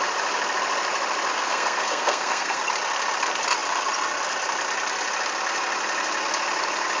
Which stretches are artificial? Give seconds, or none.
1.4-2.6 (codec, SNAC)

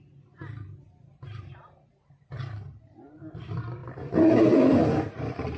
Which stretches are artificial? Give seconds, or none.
none

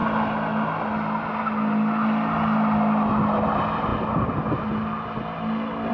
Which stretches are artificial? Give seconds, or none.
none

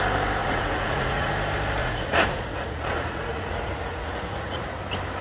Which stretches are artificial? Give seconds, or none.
0.4-1.3 (vocoder, Vocos); 1.8-4.8

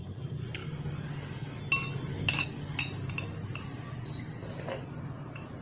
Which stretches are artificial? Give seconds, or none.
0.6-1.6 (codec, DAC); 2.1-2.8

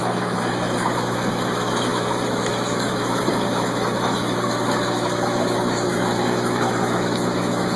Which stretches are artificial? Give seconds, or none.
0.0-7.8 (autoencoder, DAC-VAE)

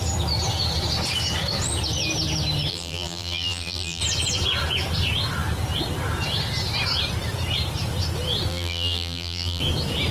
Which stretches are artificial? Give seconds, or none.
2.7-4.0 (vocoder, BigVGAN v2); 8.5-9.6

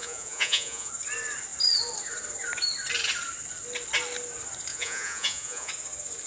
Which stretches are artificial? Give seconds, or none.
0.0-0.9 (vocoder, Vocos); 4.7-5.7